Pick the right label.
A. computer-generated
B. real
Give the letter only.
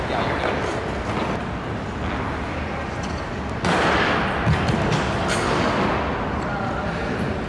B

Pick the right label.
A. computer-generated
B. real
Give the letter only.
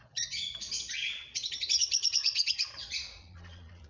A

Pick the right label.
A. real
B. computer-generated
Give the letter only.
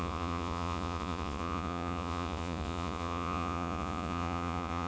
B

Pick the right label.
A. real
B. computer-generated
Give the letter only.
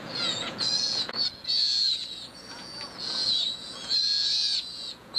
B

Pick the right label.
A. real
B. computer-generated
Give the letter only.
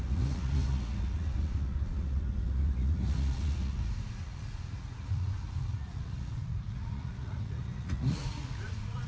B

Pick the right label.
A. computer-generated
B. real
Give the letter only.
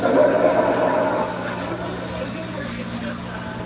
B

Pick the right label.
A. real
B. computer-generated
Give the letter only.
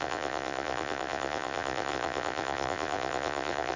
B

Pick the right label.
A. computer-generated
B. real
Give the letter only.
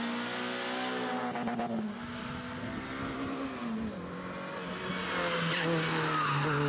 B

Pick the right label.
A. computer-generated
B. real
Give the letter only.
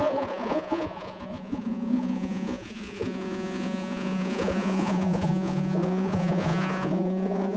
A